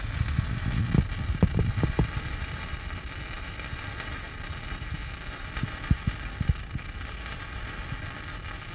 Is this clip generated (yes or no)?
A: yes